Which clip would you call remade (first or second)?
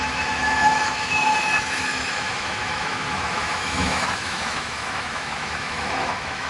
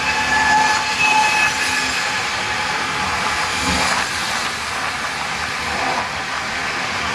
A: first